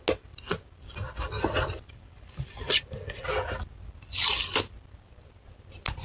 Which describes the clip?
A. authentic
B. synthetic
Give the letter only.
A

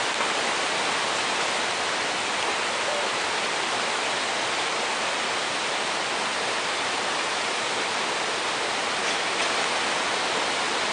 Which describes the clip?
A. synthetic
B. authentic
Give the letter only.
B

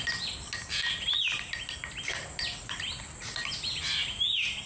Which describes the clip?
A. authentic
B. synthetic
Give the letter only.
A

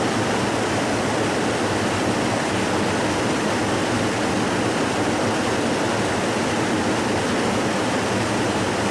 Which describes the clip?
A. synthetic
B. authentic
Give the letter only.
B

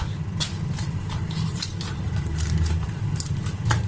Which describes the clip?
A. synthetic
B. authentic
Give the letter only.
B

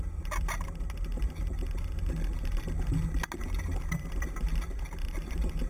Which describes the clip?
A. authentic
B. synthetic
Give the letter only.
A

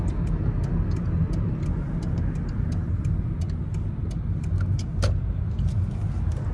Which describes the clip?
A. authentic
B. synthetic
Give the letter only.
A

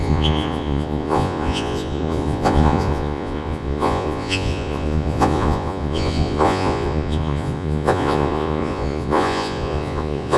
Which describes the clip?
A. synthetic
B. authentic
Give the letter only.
A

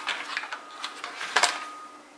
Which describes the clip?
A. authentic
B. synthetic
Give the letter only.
A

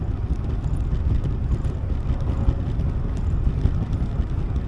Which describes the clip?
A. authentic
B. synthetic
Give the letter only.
A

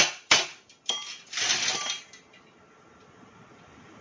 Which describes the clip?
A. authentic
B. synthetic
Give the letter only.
A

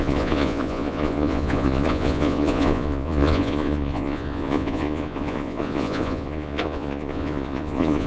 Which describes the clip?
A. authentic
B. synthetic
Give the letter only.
B